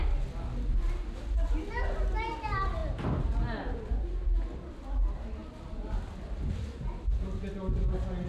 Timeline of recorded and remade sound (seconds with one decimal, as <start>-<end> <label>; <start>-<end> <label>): 0.0-8.3 recorded